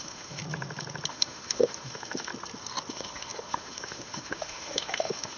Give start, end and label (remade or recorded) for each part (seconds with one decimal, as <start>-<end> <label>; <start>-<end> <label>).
0.0-0.4 remade; 0.4-1.1 recorded; 1.1-2.3 remade; 2.3-2.9 recorded; 2.9-5.4 remade